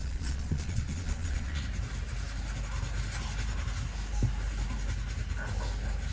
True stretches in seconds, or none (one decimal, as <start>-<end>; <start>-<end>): 1.6-6.1